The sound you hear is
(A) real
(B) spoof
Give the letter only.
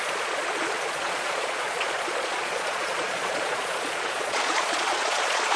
B